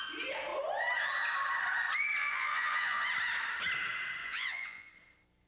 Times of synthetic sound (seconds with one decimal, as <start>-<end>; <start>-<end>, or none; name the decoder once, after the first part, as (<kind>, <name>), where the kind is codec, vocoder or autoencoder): 2.2-3.1 (vocoder, Vocos); 4.2-4.9